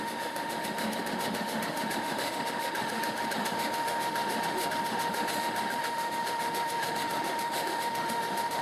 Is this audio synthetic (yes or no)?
yes